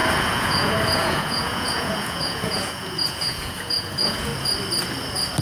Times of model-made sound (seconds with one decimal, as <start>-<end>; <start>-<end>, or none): 0.0-4.3